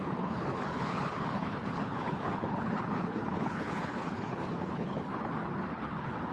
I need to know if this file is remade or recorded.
remade